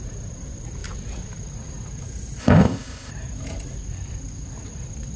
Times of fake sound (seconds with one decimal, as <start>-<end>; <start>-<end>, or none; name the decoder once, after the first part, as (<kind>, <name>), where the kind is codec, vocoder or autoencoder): 2.4-3.1 (codec, ZipCodec)